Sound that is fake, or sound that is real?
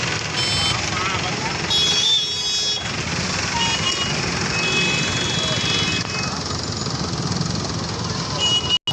real